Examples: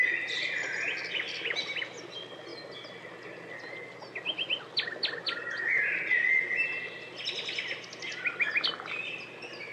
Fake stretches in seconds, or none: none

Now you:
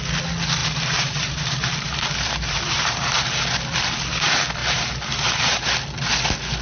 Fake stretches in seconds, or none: 0.6-3.4 (vocoder, BigVGAN v2); 4.6-5.6